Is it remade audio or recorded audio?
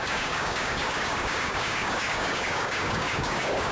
remade